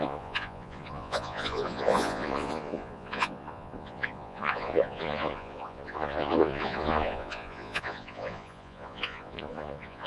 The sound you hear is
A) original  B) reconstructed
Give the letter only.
B